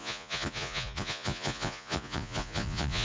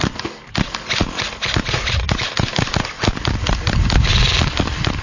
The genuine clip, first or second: second